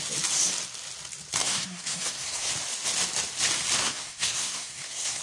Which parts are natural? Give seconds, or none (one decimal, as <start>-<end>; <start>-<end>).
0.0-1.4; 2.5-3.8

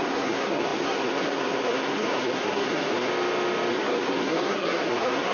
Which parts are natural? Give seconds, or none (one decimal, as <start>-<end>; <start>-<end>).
3.1-3.7

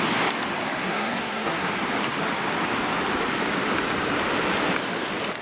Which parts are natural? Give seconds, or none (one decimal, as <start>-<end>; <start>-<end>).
0.0-0.8; 1.7-5.4

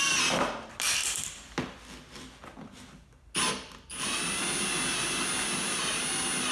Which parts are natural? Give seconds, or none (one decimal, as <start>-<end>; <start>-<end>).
0.0-6.5